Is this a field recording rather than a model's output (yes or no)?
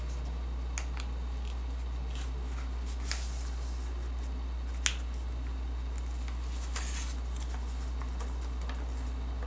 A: yes